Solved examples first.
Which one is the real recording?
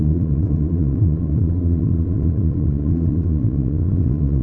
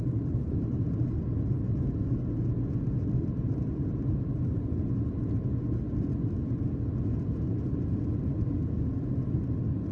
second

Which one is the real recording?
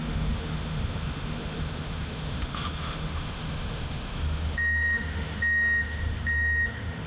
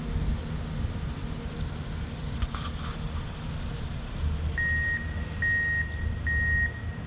second